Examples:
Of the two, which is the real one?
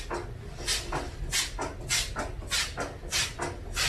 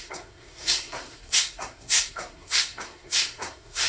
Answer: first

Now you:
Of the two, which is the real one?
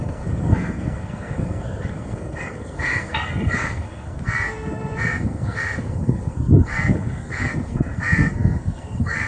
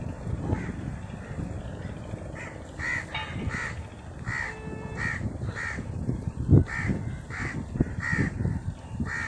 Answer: second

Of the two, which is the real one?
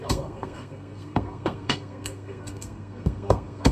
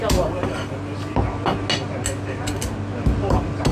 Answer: second